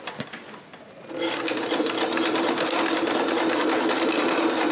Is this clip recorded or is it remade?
recorded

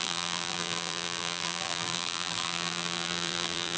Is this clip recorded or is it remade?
remade